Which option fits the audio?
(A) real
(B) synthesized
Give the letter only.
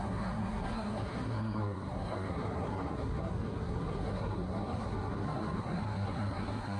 B